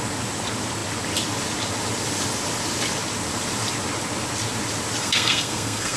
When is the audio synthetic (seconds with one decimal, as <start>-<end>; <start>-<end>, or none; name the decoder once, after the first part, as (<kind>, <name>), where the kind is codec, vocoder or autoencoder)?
5.0-6.0 (codec, SNAC)